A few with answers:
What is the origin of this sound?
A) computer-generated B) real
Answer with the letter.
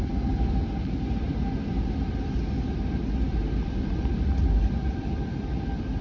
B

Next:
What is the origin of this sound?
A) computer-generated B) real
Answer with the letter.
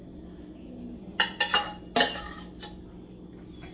B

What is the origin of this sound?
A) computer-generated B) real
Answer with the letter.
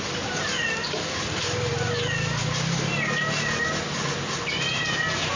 B